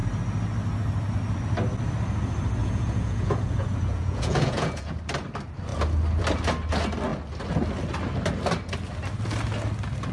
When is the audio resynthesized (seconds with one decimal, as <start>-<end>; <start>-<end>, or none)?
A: 2.6-5.0